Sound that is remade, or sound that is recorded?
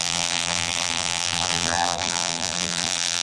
remade